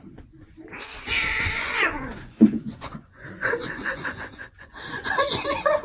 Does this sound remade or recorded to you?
remade